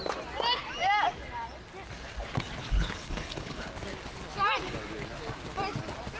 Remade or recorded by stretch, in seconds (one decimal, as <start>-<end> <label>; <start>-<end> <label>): 0.0-2.6 recorded; 2.6-3.7 remade; 3.7-6.2 recorded